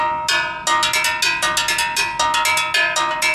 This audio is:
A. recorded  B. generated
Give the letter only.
A